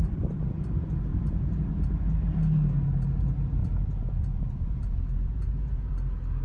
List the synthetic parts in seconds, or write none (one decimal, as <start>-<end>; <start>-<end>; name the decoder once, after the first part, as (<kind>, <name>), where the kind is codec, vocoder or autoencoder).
1.1-1.8 (vocoder, Vocos); 3.6-5.9